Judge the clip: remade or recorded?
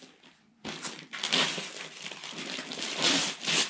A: recorded